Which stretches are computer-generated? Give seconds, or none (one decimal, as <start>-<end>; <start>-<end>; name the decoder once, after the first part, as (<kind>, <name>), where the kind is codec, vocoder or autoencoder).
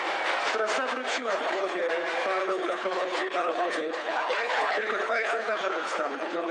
1.1-1.9 (codec, HILCodec); 2.4-6.5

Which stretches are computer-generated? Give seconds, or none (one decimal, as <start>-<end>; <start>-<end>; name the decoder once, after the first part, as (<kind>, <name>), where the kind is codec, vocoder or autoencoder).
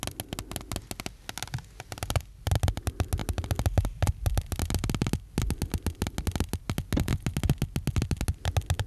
none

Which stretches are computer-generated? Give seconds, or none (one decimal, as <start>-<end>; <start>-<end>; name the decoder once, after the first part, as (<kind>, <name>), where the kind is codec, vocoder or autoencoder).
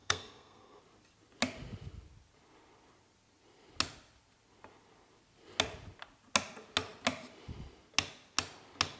0.0-0.8 (codec, SNAC)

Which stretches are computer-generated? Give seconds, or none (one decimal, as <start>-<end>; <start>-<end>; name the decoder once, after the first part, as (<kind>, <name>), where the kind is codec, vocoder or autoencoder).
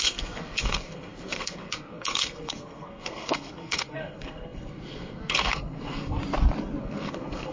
0.0-6.2 (codec, SNAC); 6.8-7.5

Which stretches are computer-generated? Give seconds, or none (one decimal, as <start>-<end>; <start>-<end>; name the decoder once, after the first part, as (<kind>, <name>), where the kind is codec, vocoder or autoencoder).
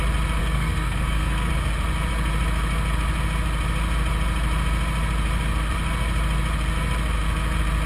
0.4-1.5 (codec, SNAC)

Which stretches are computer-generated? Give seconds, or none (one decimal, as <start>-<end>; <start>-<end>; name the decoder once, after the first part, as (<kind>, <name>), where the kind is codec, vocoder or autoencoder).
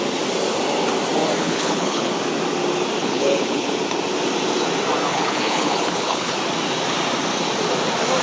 1.4-2.1 (codec, HILCodec); 3.0-3.7; 5.1-6.4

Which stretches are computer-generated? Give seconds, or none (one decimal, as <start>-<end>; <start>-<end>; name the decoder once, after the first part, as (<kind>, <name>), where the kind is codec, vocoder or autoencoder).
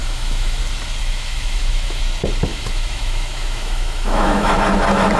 0.0-0.6 (autoencoder, DAC-VAE); 1.0-2.0; 2.5-4.5